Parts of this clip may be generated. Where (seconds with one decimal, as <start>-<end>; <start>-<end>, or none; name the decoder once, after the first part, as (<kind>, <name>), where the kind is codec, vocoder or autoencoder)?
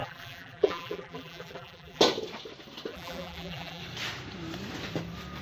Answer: 0.0-2.0 (vocoder, BigVGAN v2); 2.9-3.8